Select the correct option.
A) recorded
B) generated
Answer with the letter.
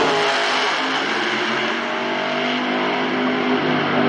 A